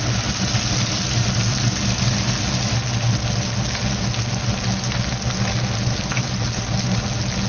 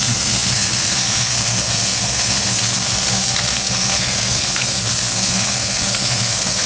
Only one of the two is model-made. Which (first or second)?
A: second